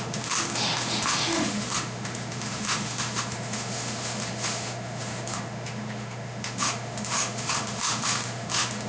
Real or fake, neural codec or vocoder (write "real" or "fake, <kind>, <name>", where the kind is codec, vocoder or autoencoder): fake, autoencoder, DAC-VAE